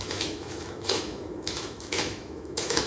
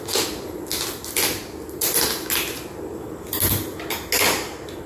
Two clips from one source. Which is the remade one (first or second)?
first